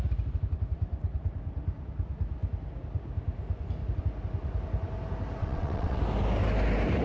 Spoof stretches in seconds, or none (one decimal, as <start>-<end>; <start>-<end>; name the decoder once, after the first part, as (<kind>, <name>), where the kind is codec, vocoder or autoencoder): 5.4-6.0 (vocoder, WaveNeXt)

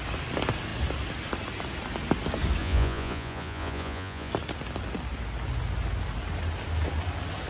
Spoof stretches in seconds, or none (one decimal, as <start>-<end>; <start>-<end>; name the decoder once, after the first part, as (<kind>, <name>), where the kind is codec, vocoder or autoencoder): 2.6-4.3 (vocoder, Vocos)

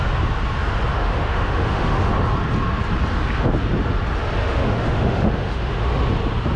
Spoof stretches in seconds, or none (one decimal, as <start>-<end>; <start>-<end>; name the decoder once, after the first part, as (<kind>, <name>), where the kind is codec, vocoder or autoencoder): 0.9-2.1 (autoencoder, DAC-VAE); 4.4-5.9

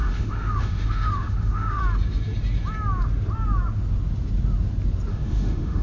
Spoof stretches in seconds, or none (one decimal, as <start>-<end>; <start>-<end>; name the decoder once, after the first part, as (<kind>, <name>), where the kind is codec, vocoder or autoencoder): 0.0-1.8 (autoencoder, DAC-VAE); 5.1-5.8

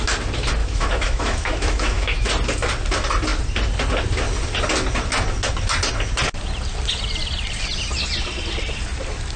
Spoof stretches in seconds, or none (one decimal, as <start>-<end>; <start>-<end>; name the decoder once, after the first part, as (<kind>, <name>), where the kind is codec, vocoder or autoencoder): 0.6-2.3 (autoencoder, DAC-VAE)